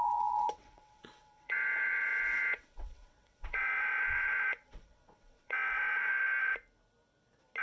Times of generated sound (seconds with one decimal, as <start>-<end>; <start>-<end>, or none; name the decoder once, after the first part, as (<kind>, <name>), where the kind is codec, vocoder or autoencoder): 0.0-6.1 (vocoder, WaveNeXt)